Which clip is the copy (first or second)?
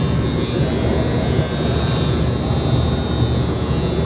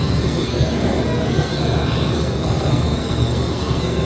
second